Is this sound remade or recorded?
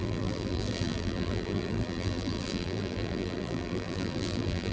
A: remade